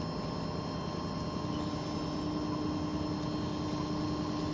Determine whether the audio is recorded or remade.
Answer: recorded